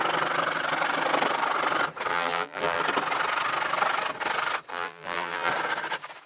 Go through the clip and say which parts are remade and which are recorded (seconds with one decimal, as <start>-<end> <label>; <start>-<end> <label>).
0.0-2.1 recorded; 2.1-2.8 remade; 2.8-4.7 recorded; 4.7-5.5 remade; 5.5-6.3 recorded